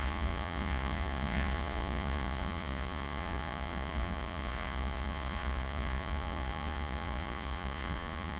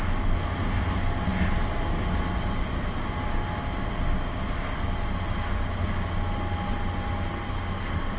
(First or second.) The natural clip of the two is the second